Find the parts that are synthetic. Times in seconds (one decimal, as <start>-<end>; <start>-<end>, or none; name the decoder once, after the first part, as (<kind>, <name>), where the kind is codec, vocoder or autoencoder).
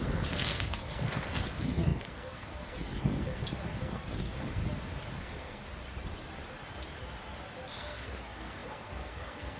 0.0-4.6 (codec, SNAC); 5.1-5.6; 7.7-9.6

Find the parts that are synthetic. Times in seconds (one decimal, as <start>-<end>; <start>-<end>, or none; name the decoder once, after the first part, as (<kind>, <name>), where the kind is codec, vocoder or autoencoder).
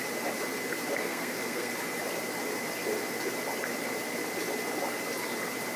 1.0-1.7 (codec, SNAC)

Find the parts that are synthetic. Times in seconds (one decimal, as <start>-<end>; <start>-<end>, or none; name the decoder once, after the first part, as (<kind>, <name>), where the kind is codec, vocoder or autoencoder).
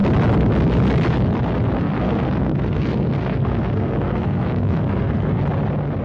1.8-5.4 (codec, SNAC)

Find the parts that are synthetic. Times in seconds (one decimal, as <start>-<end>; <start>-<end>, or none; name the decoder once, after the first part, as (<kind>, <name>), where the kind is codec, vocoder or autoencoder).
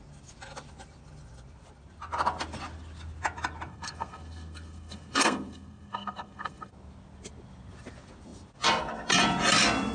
3.7-6.7 (codec, SNAC)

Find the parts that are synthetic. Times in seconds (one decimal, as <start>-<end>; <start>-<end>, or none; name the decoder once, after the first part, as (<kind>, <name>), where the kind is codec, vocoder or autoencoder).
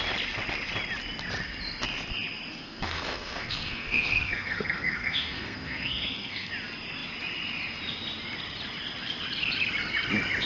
2.6-6.5 (codec, SNAC)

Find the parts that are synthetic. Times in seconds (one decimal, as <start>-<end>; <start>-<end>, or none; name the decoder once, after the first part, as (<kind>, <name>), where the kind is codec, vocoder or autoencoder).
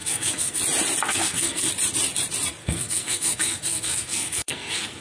0.0-0.6 (codec, SNAC); 1.1-1.7; 2.6-5.0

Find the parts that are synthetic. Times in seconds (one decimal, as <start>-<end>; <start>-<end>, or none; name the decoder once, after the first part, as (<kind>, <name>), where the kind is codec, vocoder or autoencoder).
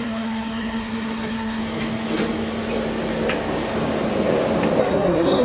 0.0-1.6 (codec, SNAC); 4.8-5.4